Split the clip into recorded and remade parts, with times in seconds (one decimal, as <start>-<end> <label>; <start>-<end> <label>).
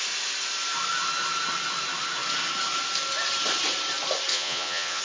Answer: 0.0-4.3 recorded; 4.3-5.0 remade